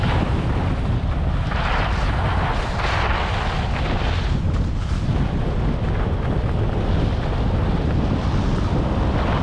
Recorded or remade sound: recorded